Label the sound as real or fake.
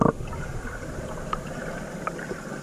real